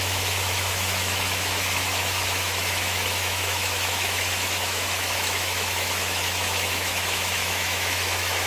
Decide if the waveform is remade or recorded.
remade